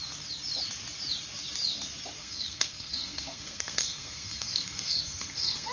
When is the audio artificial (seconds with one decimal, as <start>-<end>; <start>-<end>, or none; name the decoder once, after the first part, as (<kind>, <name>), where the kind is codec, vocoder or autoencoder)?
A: 2.2-5.7 (codec, SNAC)